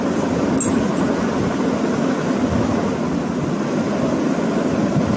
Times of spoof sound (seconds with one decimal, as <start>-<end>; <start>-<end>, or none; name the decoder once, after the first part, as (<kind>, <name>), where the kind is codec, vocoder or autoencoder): none